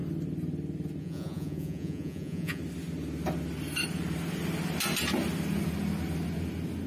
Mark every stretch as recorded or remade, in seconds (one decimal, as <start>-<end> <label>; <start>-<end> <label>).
0.0-1.0 recorded; 1.0-2.6 remade; 2.6-6.9 recorded